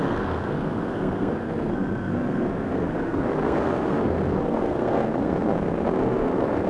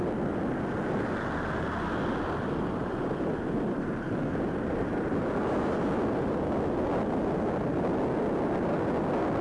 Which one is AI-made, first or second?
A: first